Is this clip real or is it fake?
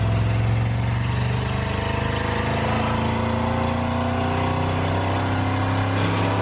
real